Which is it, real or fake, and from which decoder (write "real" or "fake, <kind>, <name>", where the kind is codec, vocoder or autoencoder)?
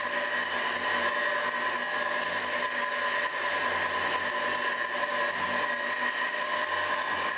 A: real